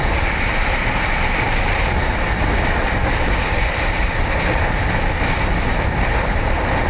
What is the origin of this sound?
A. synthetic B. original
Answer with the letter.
B